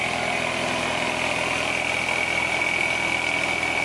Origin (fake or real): real